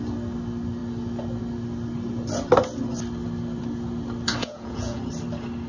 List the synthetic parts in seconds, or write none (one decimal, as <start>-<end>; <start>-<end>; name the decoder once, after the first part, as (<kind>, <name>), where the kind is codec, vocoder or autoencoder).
4.4-5.0 (vocoder, Vocos)